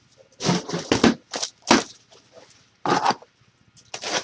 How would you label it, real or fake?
real